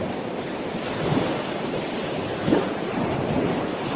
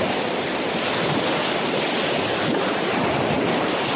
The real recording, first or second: second